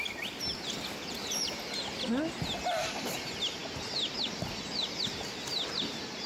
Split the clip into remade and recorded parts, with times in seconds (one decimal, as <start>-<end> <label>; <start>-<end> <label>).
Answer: 0.0-6.3 recorded